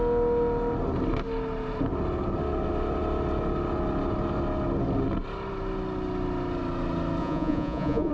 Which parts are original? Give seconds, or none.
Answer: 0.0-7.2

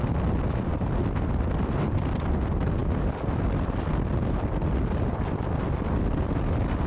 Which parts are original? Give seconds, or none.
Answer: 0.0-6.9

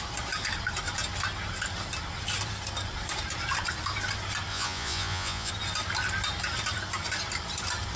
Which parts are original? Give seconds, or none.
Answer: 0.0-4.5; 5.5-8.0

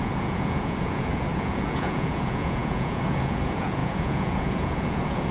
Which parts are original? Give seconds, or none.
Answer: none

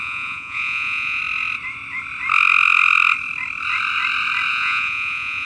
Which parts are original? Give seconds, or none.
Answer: 1.2-4.5